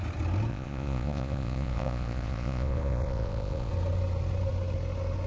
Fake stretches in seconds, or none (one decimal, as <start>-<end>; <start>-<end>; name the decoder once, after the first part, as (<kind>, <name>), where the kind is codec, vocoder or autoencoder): 0.5-3.7 (vocoder, Vocos)